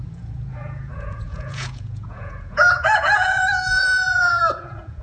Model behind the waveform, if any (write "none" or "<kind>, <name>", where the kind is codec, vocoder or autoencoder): vocoder, Vocos